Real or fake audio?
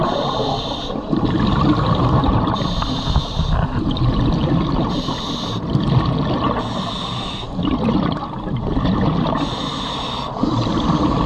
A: real